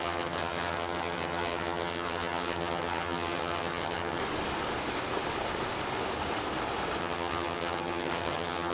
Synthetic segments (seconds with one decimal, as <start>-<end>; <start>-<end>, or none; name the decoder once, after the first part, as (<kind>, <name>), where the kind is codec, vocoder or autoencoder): 0.0-4.2 (vocoder, HiFi-GAN); 7.0-8.7